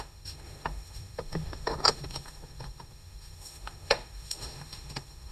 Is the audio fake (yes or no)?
yes